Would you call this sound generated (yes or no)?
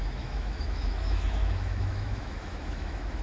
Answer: yes